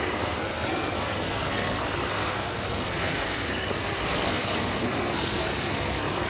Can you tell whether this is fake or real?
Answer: fake